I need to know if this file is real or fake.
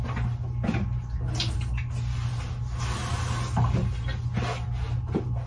real